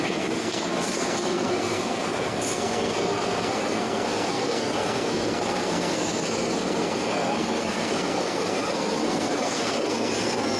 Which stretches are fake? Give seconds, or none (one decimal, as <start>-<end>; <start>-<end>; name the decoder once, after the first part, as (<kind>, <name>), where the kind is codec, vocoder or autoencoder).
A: 0.0-10.6 (codec, SNAC)